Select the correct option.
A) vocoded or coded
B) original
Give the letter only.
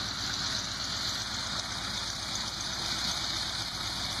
B